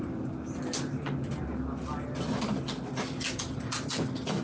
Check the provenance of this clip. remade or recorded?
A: recorded